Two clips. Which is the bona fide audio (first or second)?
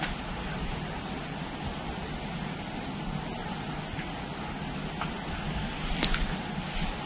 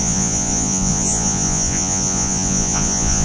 first